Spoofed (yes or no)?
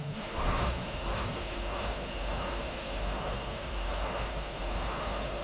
yes